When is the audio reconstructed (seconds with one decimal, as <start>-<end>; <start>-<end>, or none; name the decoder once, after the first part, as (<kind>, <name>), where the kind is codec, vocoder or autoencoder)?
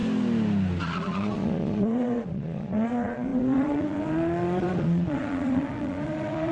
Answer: 0.8-6.5 (vocoder, Vocos)